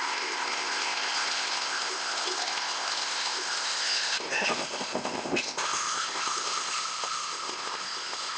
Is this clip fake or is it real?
fake